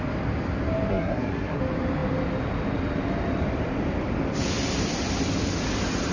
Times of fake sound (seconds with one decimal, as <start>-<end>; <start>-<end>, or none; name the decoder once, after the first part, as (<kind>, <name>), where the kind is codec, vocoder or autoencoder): 0.9-1.6 (codec, SNAC)